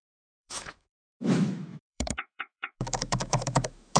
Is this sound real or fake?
fake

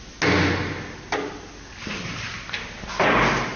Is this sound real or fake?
real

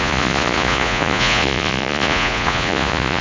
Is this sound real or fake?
fake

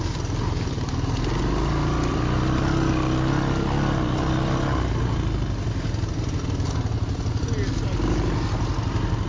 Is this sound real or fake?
real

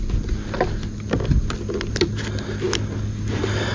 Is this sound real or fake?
real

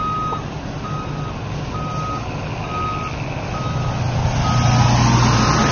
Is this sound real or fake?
real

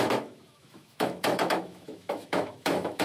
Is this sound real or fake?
fake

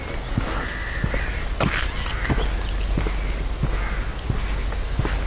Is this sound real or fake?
real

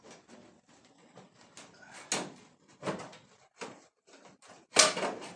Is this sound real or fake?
real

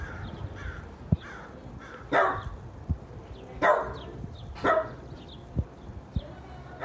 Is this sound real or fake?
real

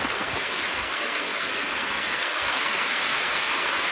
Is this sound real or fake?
fake